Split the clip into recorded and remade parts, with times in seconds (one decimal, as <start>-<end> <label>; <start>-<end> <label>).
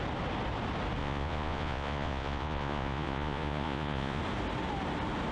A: 0.0-1.0 recorded; 1.0-4.2 remade; 4.2-5.3 recorded